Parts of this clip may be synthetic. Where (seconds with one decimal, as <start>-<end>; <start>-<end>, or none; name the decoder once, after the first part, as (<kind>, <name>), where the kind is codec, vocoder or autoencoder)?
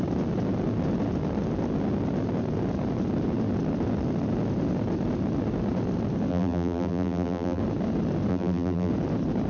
6.3-7.6 (vocoder, BigVGAN v2); 8.3-8.9